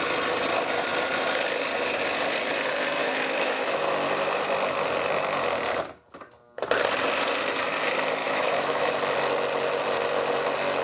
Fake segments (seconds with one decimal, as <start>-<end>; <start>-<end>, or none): 3.0-3.8; 8.2-8.9